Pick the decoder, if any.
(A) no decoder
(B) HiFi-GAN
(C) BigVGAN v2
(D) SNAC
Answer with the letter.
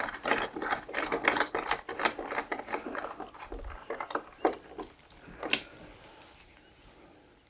A